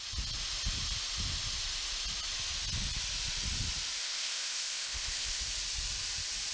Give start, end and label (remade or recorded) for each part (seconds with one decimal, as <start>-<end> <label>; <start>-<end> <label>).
0.0-4.0 recorded; 4.0-5.4 remade; 5.4-6.5 recorded